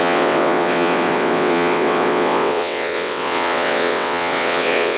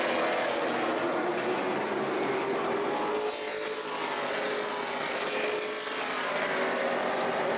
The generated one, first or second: first